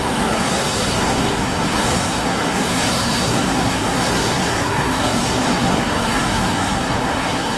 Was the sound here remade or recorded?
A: remade